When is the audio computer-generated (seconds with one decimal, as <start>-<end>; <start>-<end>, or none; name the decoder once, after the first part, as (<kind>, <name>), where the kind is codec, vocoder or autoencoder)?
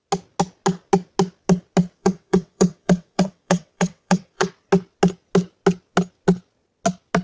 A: 2.0-4.5 (vocoder, WaveNeXt)